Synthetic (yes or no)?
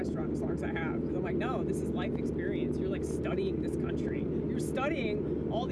no